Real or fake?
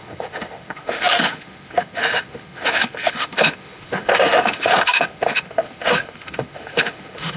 fake